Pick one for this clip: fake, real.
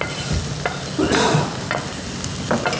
real